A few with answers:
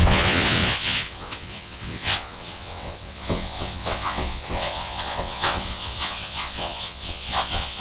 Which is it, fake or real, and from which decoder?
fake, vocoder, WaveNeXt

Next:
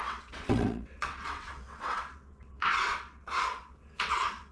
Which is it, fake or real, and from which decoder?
fake, vocoder, WaveNeXt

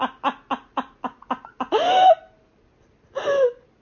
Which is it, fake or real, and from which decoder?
real